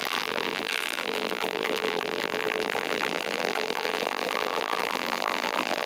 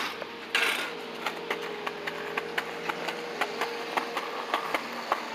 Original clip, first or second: second